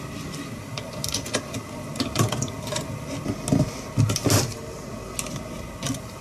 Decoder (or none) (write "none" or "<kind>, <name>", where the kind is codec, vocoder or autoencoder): none